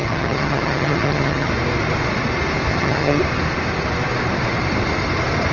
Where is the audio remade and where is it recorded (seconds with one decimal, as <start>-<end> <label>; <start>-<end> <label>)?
0.0-1.5 remade; 1.5-2.7 recorded; 2.7-3.2 remade; 3.2-5.5 recorded

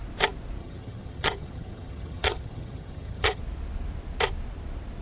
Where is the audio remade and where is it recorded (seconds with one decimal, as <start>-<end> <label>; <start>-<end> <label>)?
0.0-0.6 recorded; 0.6-3.4 remade; 3.4-5.0 recorded